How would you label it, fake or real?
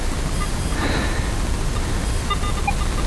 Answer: real